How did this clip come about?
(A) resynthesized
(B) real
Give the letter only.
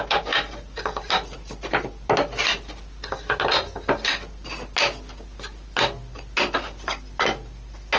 B